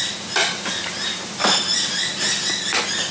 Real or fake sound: real